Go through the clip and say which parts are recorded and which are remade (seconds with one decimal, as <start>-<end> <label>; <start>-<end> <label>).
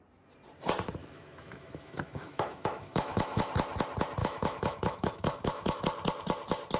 0.0-1.0 recorded; 1.0-3.5 remade; 3.5-4.2 recorded; 4.2-5.8 remade; 5.8-6.8 recorded